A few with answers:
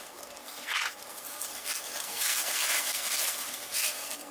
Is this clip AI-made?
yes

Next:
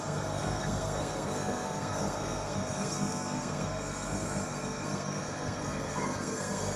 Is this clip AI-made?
yes